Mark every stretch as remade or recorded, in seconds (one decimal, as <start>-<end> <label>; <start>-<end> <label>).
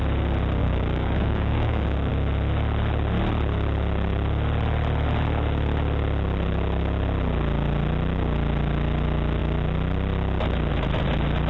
0.0-0.6 recorded; 0.6-2.1 remade; 2.1-11.5 recorded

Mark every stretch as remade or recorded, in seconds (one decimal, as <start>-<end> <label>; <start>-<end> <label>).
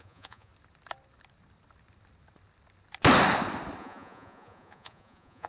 0.0-0.5 remade; 0.5-3.8 recorded; 3.8-5.5 remade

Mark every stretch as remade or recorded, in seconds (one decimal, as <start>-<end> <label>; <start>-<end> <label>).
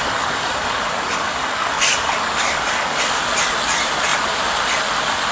0.0-3.2 remade; 3.2-5.3 recorded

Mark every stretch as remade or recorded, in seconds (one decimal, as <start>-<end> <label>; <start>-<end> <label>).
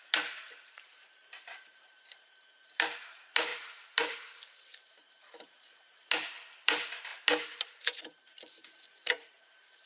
0.0-9.9 remade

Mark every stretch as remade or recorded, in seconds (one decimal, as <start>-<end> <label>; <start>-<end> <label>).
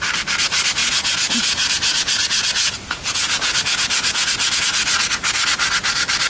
0.0-0.8 recorded; 0.8-4.6 remade; 4.6-6.3 recorded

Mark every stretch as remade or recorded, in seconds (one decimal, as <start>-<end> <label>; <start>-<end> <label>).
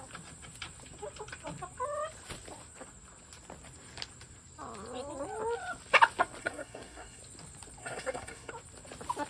0.0-6.4 recorded; 6.4-7.2 remade; 7.2-7.8 recorded; 7.8-8.5 remade; 8.5-9.3 recorded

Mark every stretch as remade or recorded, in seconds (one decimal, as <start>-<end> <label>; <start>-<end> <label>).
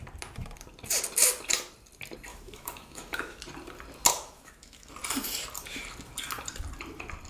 0.0-2.3 recorded; 2.3-3.4 remade; 3.4-4.1 recorded; 4.1-4.9 remade; 4.9-7.3 recorded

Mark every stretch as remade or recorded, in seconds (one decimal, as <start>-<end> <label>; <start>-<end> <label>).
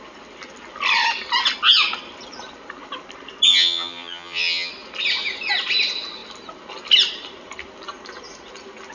0.0-3.5 recorded; 3.5-4.7 remade; 4.7-8.9 recorded